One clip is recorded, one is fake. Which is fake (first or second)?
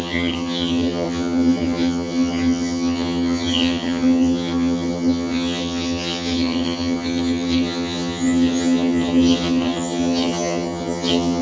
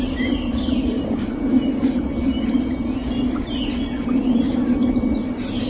first